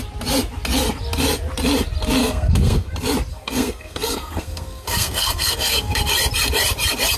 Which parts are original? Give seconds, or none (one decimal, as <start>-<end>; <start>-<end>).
0.0-2.2; 2.9-3.3; 6.0-7.2